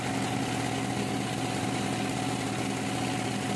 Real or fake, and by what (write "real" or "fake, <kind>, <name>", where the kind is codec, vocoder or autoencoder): real